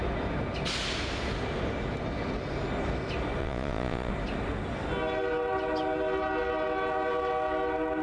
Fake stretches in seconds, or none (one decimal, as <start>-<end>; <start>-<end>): 3.4-4.1